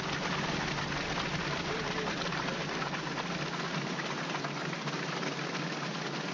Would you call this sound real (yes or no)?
yes